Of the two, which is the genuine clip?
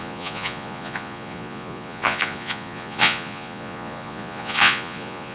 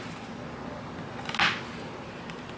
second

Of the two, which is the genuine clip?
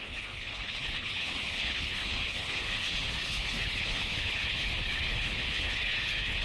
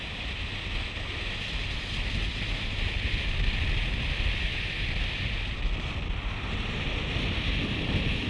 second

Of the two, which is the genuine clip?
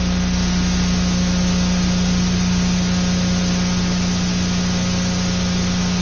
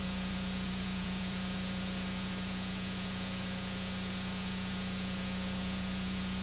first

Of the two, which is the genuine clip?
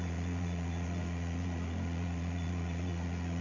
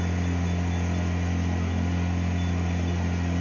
second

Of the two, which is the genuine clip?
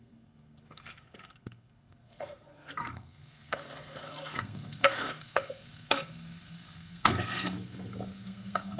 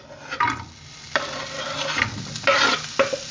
second